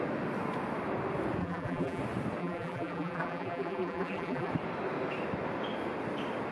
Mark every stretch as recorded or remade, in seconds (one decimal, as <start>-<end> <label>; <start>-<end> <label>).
0.0-1.4 recorded; 1.4-2.0 remade; 2.0-2.4 recorded; 2.4-4.5 remade; 4.5-6.5 recorded